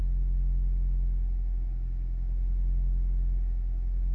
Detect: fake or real real